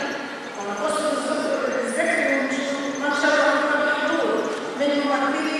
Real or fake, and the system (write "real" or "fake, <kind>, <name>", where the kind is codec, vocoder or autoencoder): real